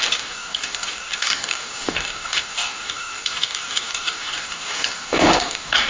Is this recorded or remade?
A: remade